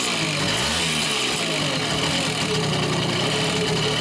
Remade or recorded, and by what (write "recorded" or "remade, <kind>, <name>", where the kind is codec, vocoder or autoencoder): recorded